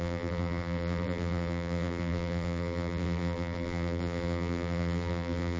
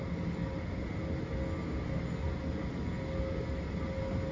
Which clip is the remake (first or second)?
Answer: first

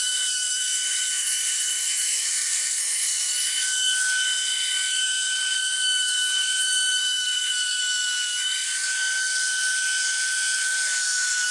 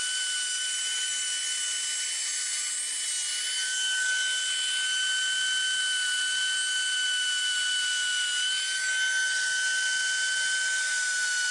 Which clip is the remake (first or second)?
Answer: first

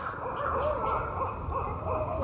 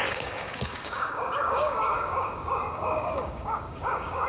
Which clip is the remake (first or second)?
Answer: second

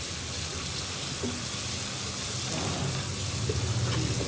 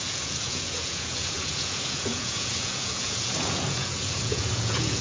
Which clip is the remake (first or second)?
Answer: second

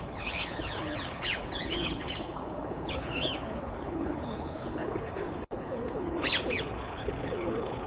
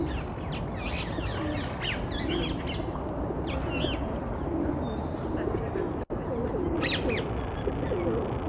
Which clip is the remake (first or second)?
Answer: first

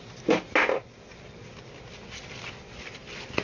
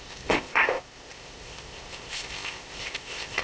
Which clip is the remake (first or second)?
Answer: second